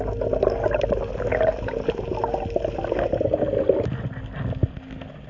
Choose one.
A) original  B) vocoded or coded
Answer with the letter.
A